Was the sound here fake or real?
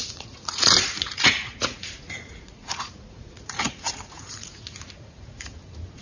fake